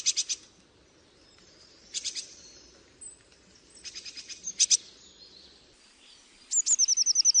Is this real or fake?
real